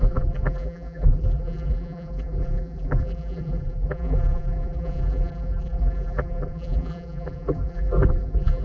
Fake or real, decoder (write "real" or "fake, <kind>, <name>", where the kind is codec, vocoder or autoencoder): fake, vocoder, BigVGAN v2